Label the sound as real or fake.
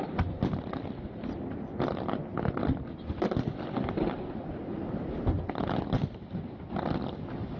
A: real